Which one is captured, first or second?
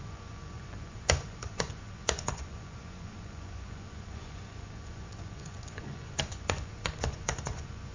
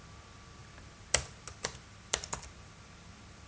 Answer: second